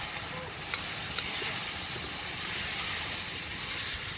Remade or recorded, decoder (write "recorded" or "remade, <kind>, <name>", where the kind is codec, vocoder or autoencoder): recorded